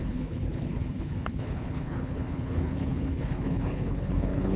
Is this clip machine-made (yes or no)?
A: yes